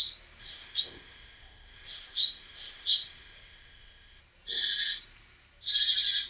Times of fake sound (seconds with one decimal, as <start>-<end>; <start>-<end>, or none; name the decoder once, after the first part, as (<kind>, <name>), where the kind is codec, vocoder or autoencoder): 0.4-4.2 (codec, ZipCodec)